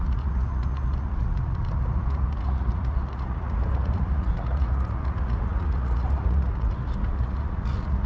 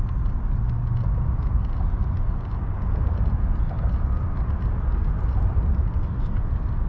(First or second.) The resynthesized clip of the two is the first